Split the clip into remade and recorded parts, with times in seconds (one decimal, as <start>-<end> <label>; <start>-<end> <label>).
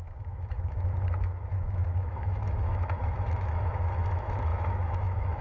0.0-5.4 remade